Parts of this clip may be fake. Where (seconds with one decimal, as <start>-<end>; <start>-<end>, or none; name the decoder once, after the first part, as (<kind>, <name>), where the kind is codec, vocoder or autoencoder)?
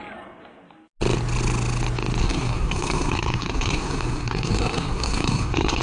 2.2-5.8 (codec, SNAC)